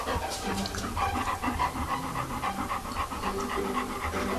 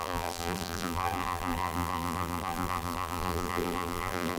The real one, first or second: first